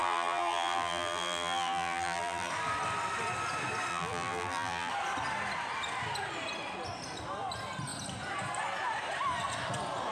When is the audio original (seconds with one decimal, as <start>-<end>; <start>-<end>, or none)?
2.5-3.9; 4.9-10.1